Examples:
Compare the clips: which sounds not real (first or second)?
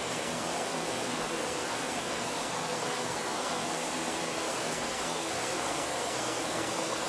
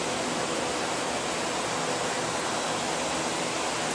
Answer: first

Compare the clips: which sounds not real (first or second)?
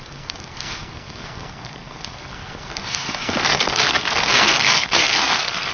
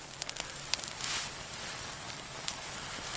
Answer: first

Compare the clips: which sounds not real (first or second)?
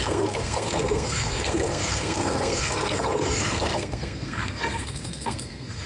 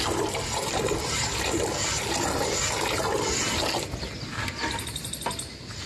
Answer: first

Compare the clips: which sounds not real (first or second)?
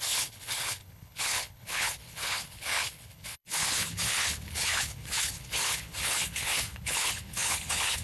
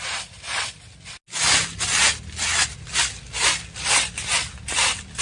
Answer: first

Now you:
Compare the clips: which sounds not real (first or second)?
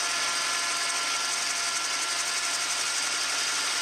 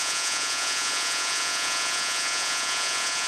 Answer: second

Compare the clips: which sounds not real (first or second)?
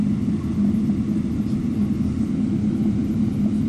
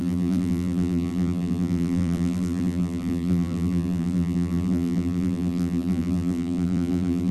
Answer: second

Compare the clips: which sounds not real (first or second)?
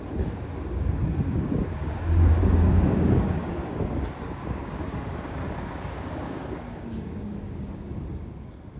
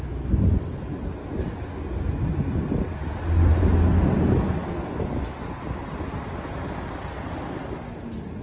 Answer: first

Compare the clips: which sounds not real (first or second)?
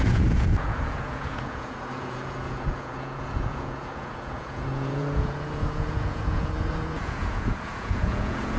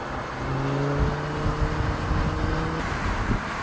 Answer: first